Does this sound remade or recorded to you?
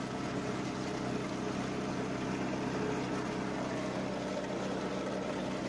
recorded